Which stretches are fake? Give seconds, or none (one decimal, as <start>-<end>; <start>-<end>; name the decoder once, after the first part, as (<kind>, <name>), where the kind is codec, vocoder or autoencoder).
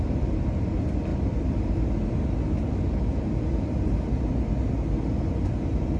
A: none